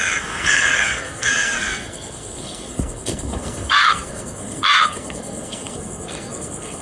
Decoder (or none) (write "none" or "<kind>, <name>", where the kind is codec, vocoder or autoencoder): codec, SNAC